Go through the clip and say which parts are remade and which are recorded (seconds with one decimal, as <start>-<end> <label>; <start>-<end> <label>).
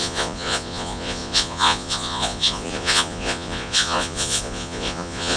0.0-5.4 remade